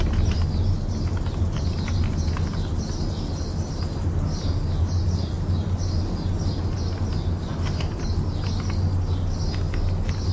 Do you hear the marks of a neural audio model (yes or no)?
no